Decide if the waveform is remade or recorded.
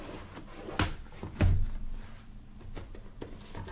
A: recorded